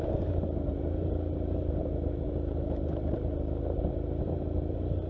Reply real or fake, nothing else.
real